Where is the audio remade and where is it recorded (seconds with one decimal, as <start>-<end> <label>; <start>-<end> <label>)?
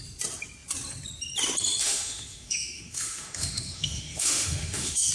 0.0-1.8 recorded; 1.8-5.1 remade